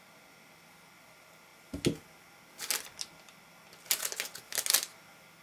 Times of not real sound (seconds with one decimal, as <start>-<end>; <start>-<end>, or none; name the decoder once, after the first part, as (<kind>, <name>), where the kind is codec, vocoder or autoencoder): none